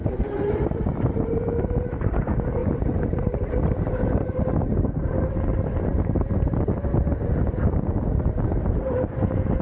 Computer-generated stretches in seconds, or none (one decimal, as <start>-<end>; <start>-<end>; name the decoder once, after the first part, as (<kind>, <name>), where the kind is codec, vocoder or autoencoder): 0.0-1.6 (vocoder, BigVGAN v2); 2.6-7.3